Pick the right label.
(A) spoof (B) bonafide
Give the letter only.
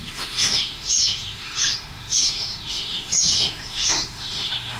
A